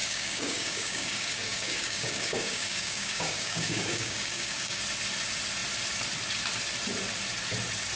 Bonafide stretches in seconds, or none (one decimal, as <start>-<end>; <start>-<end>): 4.8-8.0